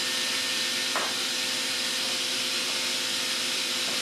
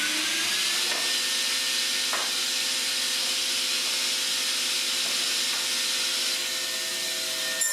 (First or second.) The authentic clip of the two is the second